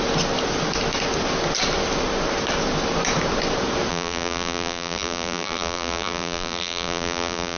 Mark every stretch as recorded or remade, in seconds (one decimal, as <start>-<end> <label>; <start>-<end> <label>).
0.0-3.9 recorded; 3.9-7.6 remade